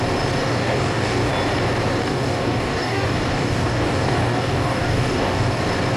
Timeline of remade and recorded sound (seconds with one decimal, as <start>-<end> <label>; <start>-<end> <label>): 0.0-0.4 recorded; 0.4-1.3 remade; 1.3-2.0 recorded; 2.0-5.6 remade; 5.6-6.0 recorded